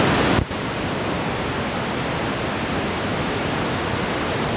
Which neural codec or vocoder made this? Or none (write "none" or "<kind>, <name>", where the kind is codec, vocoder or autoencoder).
none